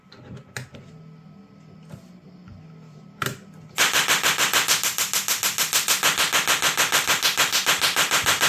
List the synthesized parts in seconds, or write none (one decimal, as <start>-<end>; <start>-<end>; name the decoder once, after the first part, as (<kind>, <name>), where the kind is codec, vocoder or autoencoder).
none